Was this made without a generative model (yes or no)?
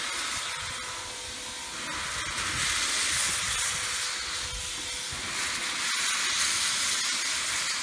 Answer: yes